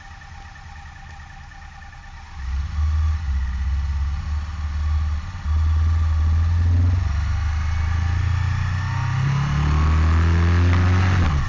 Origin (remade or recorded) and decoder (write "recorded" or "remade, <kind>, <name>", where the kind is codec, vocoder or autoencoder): recorded